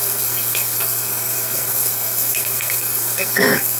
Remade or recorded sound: remade